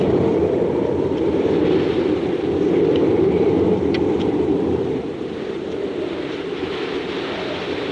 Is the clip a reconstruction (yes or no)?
yes